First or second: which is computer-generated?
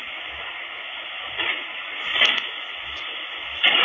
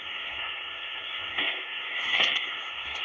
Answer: second